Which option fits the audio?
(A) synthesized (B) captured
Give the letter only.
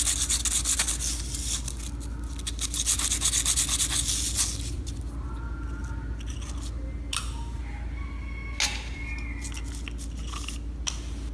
B